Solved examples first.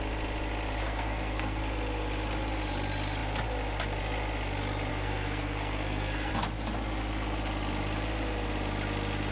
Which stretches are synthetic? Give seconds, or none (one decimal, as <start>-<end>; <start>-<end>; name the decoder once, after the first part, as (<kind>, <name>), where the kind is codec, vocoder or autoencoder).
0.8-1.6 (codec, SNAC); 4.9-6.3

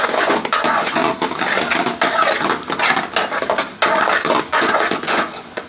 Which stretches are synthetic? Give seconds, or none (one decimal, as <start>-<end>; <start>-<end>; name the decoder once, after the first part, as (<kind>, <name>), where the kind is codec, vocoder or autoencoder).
0.0-1.0 (vocoder, Vocos); 4.4-5.7

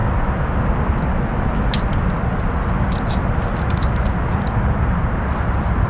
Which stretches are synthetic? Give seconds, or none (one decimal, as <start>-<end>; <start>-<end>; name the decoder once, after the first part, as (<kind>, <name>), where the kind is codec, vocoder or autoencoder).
none

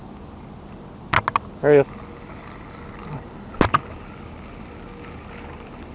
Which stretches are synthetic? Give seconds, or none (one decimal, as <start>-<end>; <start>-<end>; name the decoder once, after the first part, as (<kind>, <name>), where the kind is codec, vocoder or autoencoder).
none

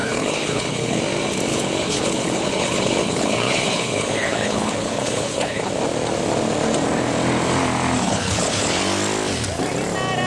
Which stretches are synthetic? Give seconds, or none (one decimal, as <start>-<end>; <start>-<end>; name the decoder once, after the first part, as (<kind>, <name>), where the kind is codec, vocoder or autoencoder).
0.0-1.0 (codec, HILCodec); 1.5-5.7; 8.0-8.8